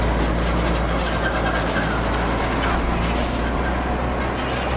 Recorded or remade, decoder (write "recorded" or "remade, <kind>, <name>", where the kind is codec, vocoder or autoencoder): recorded